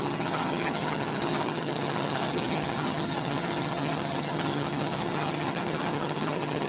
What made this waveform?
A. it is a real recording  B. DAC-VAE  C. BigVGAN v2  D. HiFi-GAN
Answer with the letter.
D